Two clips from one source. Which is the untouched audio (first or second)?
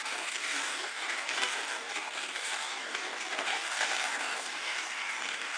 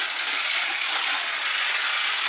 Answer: second